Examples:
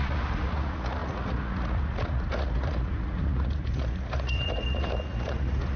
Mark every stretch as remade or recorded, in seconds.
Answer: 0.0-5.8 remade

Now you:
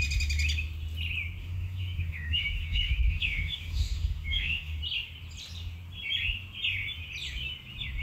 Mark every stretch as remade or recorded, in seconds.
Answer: 0.0-1.4 recorded; 1.4-4.8 remade; 4.8-8.0 recorded

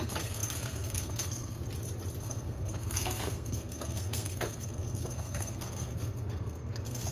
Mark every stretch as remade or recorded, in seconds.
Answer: 0.0-1.6 remade; 1.6-2.2 recorded; 2.2-7.1 remade

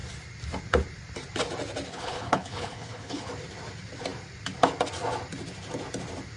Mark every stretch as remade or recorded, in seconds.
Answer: 0.0-1.9 recorded; 1.9-3.3 remade; 3.3-6.4 recorded